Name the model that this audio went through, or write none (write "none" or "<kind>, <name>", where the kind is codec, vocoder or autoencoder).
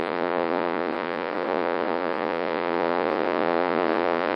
vocoder, Vocos